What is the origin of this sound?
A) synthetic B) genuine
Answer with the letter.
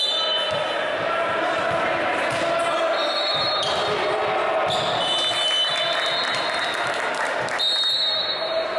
B